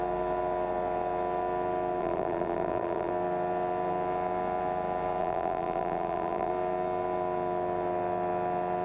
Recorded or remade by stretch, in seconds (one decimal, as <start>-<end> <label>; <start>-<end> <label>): 0.0-2.0 recorded; 2.0-3.1 remade; 3.1-5.2 recorded; 5.2-6.5 remade; 6.5-8.8 recorded